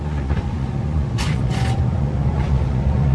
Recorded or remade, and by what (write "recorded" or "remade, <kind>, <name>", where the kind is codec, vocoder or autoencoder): remade, vocoder, Vocos